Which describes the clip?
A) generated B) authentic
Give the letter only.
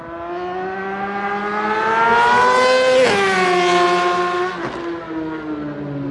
B